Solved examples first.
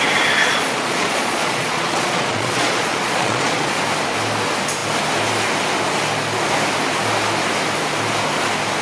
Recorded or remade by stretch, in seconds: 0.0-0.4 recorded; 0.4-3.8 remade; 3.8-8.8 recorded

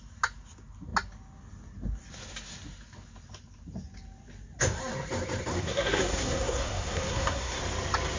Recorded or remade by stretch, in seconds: 0.0-5.5 recorded; 5.5-7.6 remade; 7.6-8.2 recorded

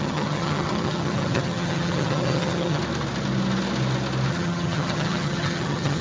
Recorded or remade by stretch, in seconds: 0.0-2.8 remade; 2.8-4.3 recorded; 4.3-6.0 remade

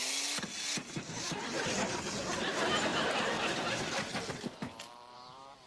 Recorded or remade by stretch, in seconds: 0.0-0.8 recorded; 0.8-1.7 remade; 1.7-2.9 recorded; 2.9-5.7 remade

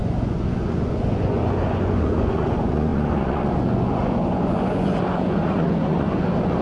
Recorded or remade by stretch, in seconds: 0.0-6.6 remade